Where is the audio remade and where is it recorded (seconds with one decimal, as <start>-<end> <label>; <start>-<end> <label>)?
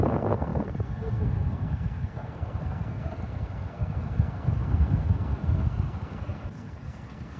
0.0-7.4 remade